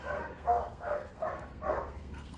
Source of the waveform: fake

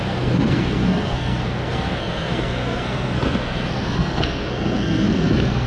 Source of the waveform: fake